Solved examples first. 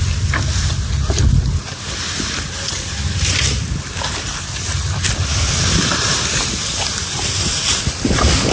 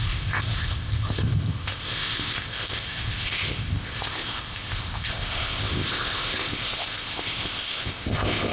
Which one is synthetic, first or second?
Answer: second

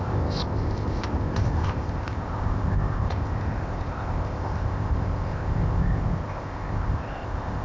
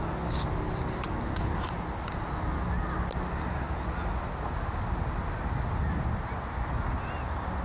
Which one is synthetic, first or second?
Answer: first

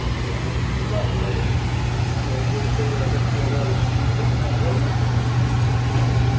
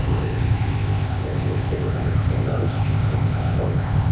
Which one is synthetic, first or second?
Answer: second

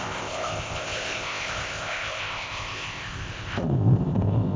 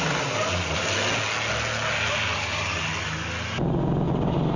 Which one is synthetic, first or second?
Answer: first